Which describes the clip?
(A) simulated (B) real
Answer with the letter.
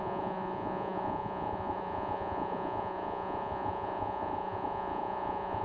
A